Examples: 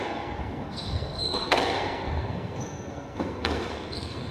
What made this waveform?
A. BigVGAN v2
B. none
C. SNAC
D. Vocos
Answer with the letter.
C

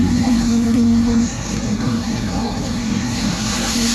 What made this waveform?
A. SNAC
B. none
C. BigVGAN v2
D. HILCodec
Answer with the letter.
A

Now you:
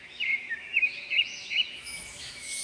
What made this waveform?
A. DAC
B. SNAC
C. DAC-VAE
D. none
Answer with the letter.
C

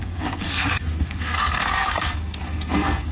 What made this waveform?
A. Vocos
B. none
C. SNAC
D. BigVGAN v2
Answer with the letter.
C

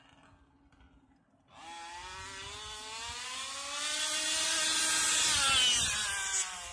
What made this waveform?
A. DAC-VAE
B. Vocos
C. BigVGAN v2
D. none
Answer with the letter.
D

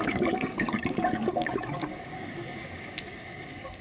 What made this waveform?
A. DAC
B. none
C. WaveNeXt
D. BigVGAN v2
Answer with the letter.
A